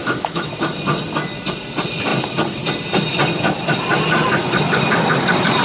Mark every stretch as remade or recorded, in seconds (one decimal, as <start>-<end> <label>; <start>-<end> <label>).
0.0-0.5 remade; 0.5-5.6 recorded